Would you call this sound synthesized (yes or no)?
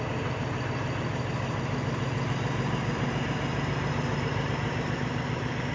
no